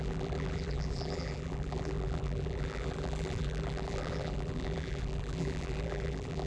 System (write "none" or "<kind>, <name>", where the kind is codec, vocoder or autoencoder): vocoder, BigVGAN v2